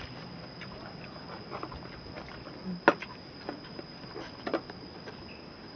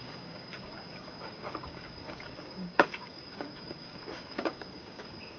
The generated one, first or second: second